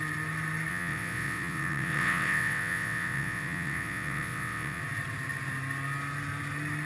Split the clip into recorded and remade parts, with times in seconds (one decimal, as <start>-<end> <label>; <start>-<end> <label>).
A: 0.0-0.7 recorded; 0.7-4.8 remade; 4.8-6.9 recorded